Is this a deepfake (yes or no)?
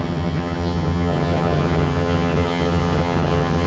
yes